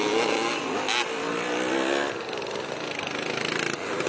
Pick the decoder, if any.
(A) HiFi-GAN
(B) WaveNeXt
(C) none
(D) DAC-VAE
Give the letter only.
C